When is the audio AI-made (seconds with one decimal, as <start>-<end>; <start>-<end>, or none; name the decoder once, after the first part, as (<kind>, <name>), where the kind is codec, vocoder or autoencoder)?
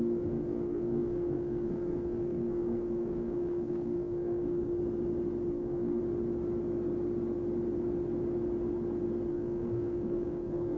0.0-4.8 (codec, SNAC); 5.5-6.0; 9.3-10.8